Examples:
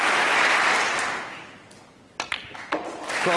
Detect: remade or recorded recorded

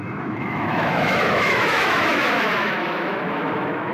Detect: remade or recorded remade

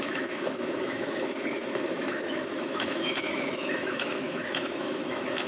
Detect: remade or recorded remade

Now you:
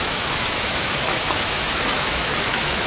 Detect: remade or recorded remade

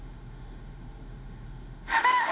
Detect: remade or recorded remade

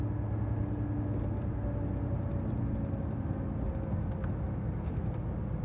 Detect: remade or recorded recorded